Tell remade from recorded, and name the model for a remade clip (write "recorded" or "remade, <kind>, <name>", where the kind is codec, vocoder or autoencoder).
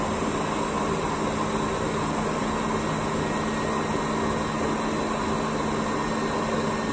recorded